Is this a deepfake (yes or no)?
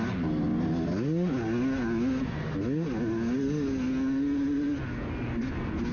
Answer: no